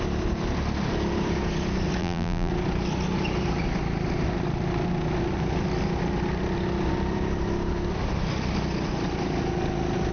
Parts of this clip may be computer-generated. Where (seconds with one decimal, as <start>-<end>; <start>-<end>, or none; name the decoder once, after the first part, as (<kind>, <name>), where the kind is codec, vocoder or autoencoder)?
2.0-2.5 (vocoder, BigVGAN v2)